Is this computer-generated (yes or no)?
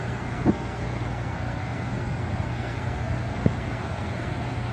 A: yes